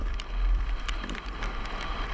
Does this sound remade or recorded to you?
remade